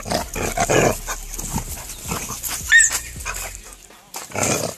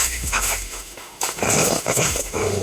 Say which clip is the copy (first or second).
second